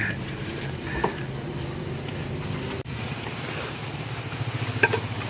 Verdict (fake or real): fake